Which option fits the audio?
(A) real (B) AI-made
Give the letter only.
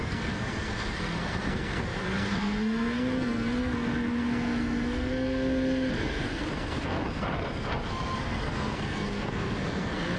B